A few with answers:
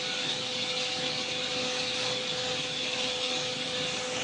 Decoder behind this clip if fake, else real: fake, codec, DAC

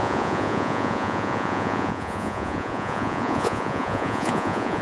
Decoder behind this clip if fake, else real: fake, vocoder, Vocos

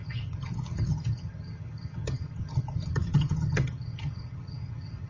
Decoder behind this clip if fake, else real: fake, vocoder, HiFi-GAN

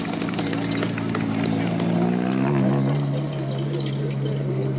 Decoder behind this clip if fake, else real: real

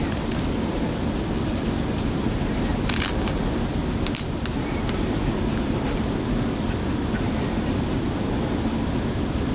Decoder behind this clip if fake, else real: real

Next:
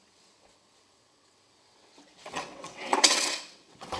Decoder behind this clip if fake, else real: fake, vocoder, WaveNeXt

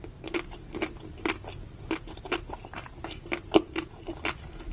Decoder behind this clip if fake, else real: real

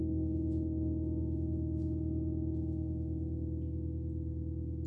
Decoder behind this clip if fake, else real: real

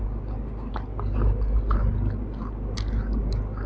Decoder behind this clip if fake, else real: real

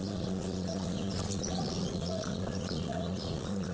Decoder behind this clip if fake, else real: fake, vocoder, Vocos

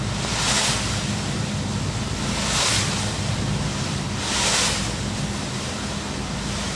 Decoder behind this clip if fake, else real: real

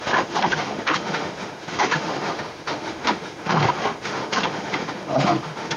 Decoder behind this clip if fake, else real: fake, autoencoder, DAC-VAE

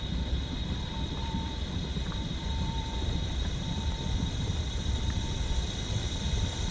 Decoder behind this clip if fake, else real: fake, vocoder, BigVGAN v2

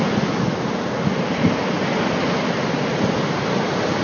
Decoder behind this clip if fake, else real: real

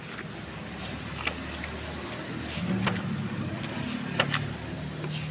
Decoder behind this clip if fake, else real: real